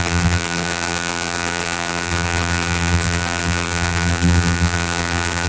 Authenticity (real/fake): fake